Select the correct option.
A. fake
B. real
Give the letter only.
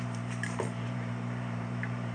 A